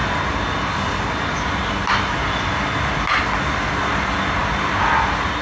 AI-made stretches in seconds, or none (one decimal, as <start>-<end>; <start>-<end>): none